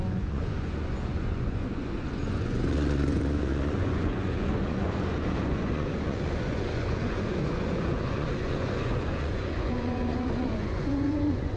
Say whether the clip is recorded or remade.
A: remade